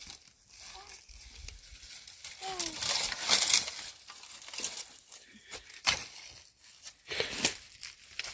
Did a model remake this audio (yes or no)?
no